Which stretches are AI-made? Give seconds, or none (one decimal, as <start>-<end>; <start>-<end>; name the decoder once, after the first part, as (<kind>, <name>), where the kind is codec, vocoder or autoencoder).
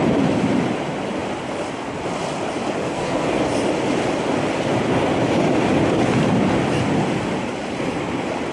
2.8-3.4 (codec, SNAC)